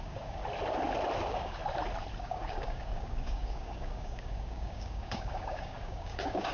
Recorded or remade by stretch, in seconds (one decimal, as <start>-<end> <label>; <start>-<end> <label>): 0.0-0.4 remade; 0.4-1.2 recorded; 1.2-1.6 remade; 1.6-2.2 recorded; 2.2-6.5 remade